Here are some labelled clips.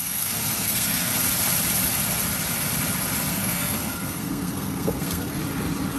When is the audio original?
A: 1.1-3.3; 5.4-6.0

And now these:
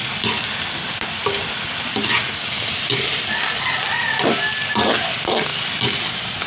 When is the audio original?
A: 0.0-6.5